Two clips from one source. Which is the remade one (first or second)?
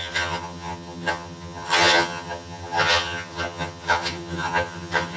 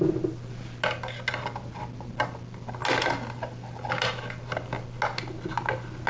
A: first